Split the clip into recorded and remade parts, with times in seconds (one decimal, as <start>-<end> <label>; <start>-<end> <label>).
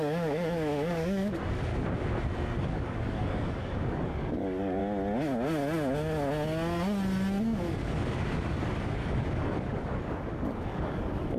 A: 0.0-1.7 remade; 1.7-2.6 recorded; 2.6-4.8 remade; 4.8-7.4 recorded; 7.4-11.4 remade